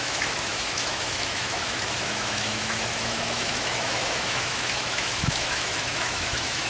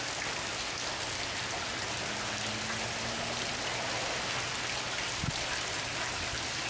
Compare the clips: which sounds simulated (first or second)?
first